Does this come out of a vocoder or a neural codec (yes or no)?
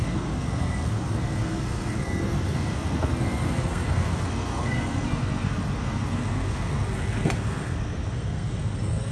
yes